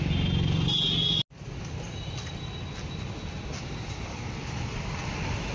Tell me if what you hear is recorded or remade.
recorded